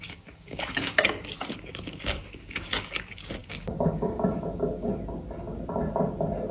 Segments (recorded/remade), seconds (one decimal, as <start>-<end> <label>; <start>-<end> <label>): 0.0-4.9 remade; 4.9-6.5 recorded